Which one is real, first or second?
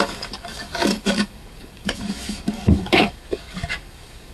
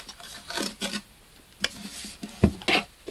second